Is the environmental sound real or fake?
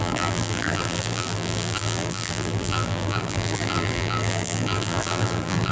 fake